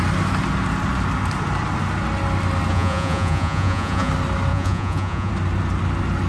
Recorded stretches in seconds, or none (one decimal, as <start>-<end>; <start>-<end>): 0.0-2.7; 4.1-4.5; 5.3-6.3